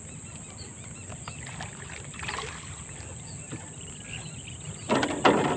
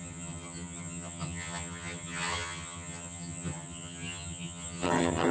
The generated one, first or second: second